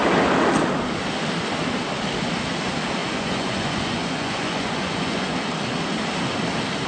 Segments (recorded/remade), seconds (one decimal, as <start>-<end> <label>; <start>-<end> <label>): 0.0-3.0 recorded; 3.0-5.5 remade; 5.5-6.9 recorded